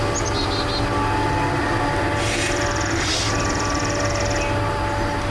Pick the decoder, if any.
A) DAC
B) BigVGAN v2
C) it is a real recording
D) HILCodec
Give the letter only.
C